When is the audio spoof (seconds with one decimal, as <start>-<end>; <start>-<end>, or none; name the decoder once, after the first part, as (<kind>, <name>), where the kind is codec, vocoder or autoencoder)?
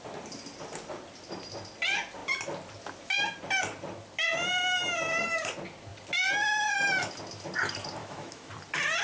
8.0-8.5 (autoencoder, DAC-VAE)